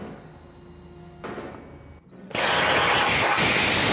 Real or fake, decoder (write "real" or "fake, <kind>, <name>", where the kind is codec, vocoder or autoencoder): real